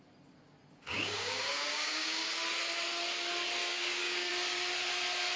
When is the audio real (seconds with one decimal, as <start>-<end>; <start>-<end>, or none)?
0.0-0.9; 2.4-3.6; 4.3-5.4

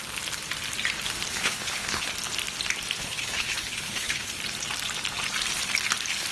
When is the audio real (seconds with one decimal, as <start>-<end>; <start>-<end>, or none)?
0.0-1.3; 2.1-3.0; 4.3-6.3